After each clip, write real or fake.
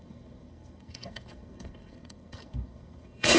fake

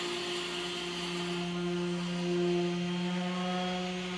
real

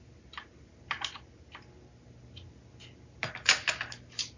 real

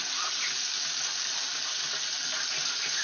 real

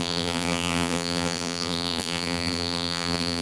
fake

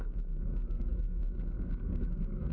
fake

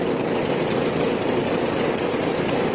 real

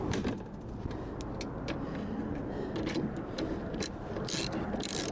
real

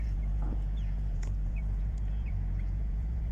fake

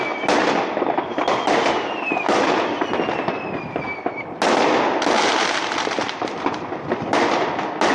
real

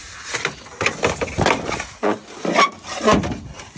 real